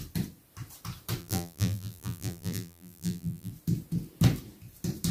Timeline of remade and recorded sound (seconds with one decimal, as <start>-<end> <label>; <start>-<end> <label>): 0.0-1.2 recorded; 1.2-3.5 remade; 3.5-5.1 recorded